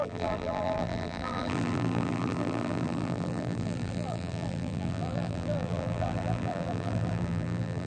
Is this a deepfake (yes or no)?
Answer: yes